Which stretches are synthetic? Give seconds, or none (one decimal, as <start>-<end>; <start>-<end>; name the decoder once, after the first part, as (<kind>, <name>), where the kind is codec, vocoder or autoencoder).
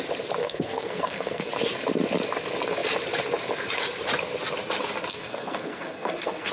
0.4-1.5 (codec, SNAC); 5.1-6.5